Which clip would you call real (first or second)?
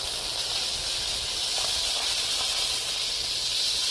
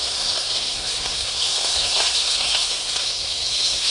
first